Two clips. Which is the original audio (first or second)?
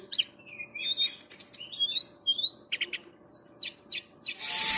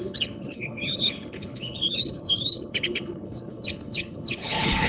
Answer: first